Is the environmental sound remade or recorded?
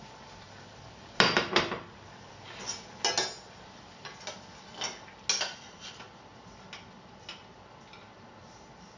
recorded